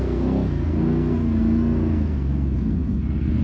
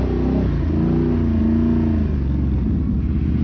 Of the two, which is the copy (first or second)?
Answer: first